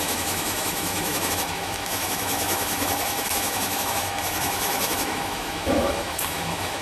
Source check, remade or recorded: remade